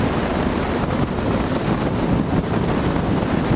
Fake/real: real